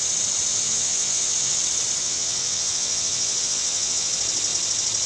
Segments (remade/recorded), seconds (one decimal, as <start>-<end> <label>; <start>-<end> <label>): 0.0-0.5 recorded; 0.5-1.6 remade; 1.6-2.0 recorded; 2.0-4.1 remade; 4.1-5.1 recorded